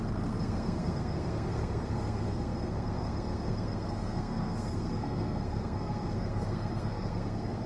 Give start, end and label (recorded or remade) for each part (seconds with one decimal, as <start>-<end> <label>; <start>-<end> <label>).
0.0-7.7 remade